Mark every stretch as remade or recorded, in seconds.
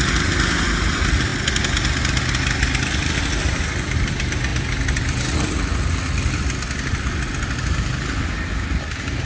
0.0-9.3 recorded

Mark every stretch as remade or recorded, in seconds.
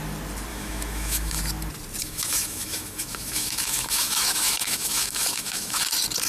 0.0-0.5 recorded; 0.5-1.4 remade; 1.4-2.0 recorded; 2.0-5.8 remade; 5.8-6.3 recorded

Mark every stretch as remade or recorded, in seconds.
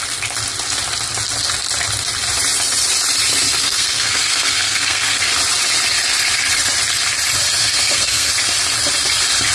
0.0-3.6 recorded; 3.6-5.2 remade; 5.2-7.6 recorded; 7.6-8.3 remade; 8.3-9.5 recorded